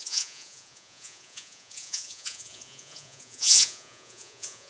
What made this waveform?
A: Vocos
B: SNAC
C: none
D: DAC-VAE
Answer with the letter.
A